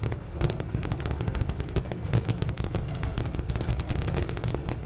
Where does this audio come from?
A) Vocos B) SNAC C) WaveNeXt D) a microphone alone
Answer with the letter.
B